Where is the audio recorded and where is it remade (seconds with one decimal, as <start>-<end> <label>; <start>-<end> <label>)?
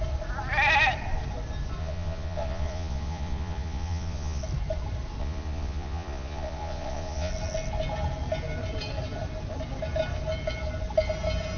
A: 0.0-1.8 recorded; 1.8-4.4 remade; 4.4-5.2 recorded; 5.2-7.3 remade; 7.3-11.6 recorded